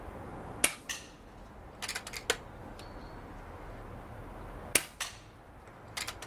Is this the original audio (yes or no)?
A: yes